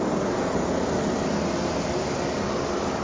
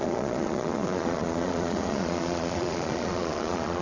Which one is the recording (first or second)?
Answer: first